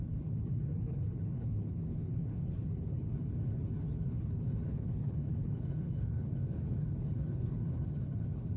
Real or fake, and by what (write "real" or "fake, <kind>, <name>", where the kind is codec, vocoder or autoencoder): fake, codec, HILCodec